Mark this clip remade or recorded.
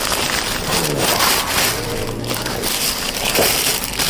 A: recorded